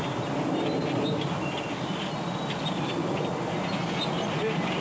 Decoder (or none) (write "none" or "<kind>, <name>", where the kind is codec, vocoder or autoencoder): none